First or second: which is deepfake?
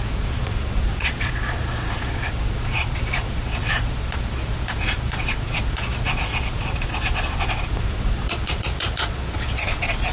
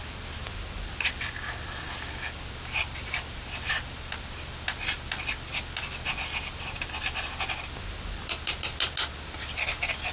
first